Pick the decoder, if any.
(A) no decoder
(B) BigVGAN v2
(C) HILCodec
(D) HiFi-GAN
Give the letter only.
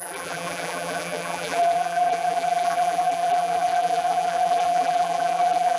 B